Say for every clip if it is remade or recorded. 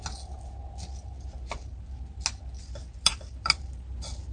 recorded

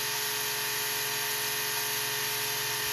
recorded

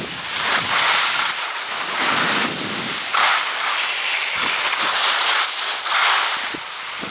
recorded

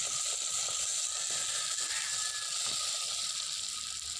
recorded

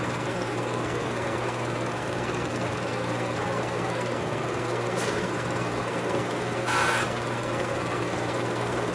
remade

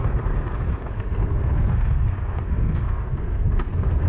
remade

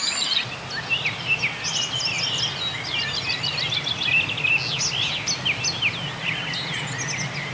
recorded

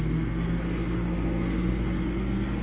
remade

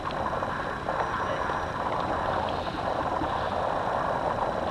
recorded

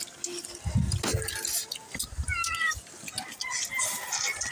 recorded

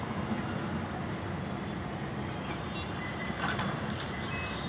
recorded